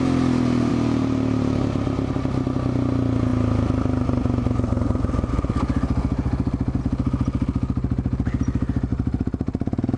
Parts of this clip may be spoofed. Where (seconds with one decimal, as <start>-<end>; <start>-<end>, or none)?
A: 0.7-2.1; 8.9-10.0